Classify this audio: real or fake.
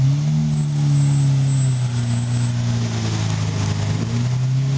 real